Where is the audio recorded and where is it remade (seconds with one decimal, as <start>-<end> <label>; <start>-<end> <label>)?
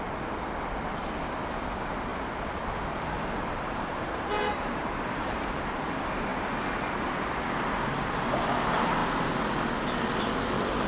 0.0-2.1 recorded; 2.1-5.6 remade; 5.6-10.9 recorded